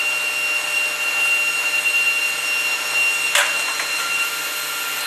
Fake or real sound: real